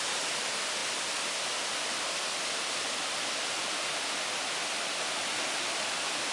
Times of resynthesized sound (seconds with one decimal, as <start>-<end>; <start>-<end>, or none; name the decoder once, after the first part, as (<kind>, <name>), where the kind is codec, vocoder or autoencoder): none